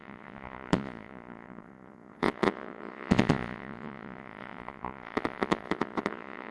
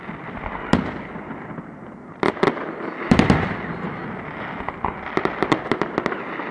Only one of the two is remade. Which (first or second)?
first